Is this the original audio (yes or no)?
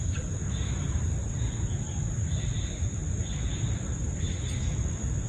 no